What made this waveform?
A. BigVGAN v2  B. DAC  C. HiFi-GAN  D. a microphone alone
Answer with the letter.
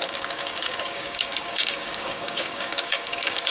B